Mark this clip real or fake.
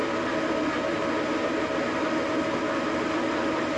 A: real